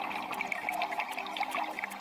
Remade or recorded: recorded